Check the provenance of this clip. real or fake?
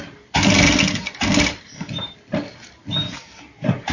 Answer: real